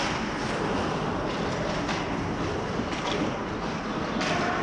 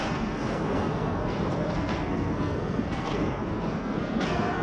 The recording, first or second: first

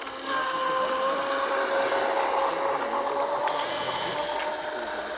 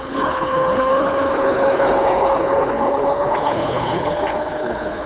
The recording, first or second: first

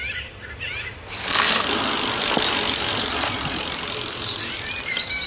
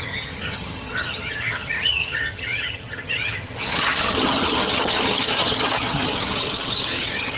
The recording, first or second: first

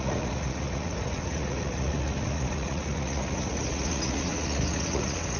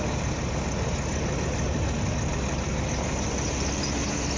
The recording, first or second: second